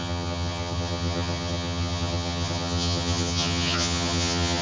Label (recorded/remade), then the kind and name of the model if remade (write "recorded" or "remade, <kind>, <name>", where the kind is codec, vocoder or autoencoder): remade, vocoder, HiFi-GAN